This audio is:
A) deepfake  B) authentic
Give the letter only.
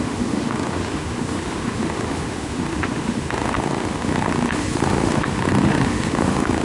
A